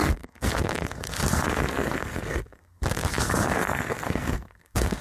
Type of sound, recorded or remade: remade